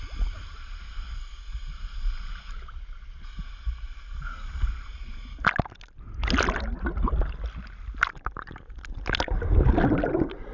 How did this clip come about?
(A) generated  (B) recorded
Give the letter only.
B